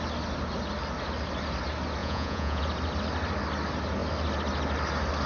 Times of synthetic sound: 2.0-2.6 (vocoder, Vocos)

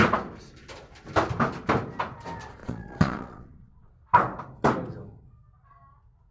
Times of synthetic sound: 2.6-3.9 (vocoder, Vocos)

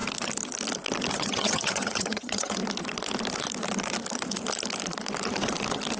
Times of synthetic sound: 1.1-2.6 (vocoder, HiFi-GAN)

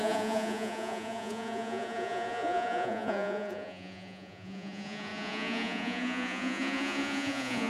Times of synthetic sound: 0.0-7.7 (vocoder, Vocos)

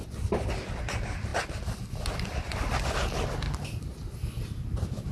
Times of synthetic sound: none